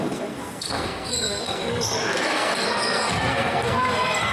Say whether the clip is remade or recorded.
remade